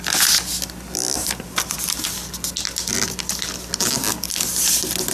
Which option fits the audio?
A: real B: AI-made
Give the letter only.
A